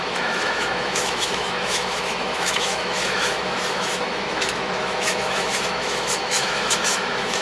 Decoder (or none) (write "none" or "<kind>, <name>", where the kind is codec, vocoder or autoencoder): autoencoder, DAC-VAE